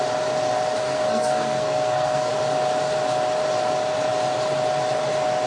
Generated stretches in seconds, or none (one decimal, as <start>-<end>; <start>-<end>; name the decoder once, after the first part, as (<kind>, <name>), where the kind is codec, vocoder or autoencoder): 0.8-2.3 (codec, SNAC)